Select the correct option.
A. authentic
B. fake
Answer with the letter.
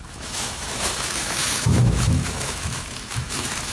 B